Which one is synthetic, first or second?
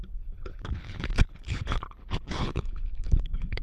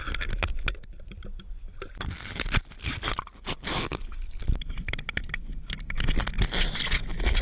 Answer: first